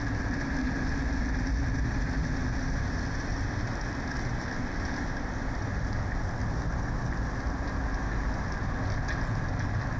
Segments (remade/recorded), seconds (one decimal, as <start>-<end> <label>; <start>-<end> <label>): 0.0-10.0 recorded